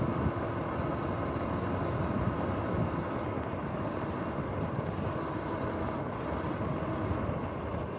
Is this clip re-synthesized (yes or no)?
no